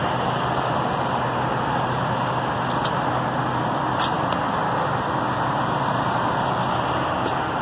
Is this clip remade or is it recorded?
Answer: recorded